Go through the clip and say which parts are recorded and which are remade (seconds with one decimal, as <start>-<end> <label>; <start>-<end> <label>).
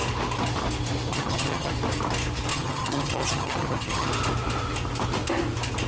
0.0-1.1 recorded; 1.1-1.7 remade; 1.7-2.5 recorded; 2.5-4.1 remade; 4.1-5.9 recorded